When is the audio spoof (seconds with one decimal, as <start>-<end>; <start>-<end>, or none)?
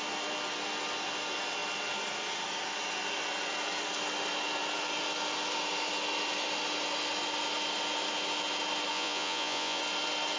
8.9-9.8